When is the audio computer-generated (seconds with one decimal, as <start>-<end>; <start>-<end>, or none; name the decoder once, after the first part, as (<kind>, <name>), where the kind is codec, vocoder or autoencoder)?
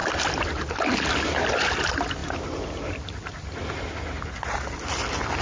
none